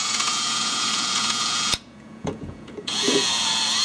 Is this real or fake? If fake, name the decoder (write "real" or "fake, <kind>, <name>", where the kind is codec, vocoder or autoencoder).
fake, vocoder, Vocos